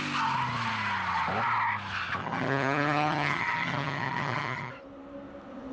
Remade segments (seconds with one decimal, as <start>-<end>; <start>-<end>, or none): 2.2-4.7